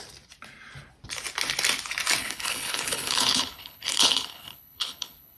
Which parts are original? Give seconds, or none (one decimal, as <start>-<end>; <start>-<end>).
0.0-2.2